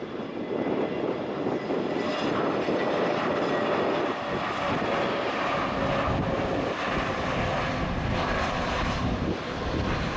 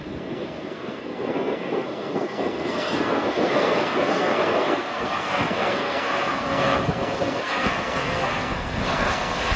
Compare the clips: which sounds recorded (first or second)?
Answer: first